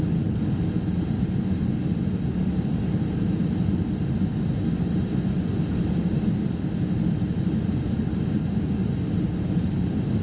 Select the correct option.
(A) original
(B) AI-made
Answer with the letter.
A